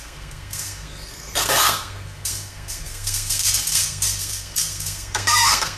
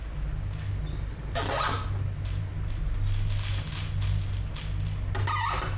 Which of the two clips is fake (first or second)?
first